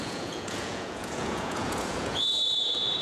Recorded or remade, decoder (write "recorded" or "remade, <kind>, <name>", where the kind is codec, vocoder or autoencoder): remade, vocoder, Vocos